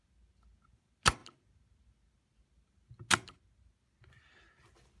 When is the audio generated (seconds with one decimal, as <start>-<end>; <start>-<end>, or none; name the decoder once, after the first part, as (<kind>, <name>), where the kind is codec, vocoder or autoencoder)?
none

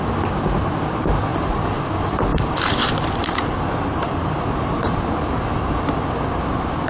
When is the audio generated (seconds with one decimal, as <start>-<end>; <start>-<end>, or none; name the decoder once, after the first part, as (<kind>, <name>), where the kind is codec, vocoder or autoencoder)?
1.3-1.9 (vocoder, BigVGAN v2); 2.3-5.9

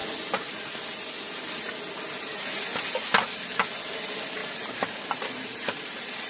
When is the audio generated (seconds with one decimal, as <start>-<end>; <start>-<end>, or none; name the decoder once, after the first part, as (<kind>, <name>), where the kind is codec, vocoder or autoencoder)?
4.4-6.3 (vocoder, BigVGAN v2)

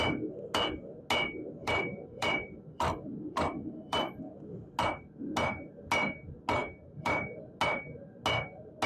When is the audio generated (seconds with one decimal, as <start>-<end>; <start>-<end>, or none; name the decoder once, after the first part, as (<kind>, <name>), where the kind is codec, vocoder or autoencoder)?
1.6-4.2 (vocoder, BigVGAN v2); 6.6-7.4

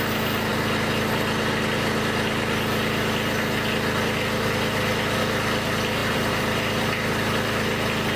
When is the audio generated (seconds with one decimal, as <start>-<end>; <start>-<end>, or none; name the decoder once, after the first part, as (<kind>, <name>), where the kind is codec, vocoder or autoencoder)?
6.0-8.2 (vocoder, BigVGAN v2)

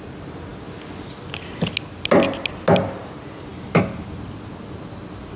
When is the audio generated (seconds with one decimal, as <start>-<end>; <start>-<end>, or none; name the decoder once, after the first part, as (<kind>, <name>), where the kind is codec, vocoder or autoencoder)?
none